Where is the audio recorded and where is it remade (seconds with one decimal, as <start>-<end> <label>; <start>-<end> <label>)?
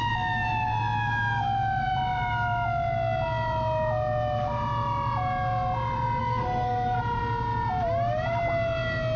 0.0-6.2 recorded; 6.2-7.0 remade; 7.0-9.2 recorded